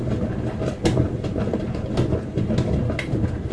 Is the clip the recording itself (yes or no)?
yes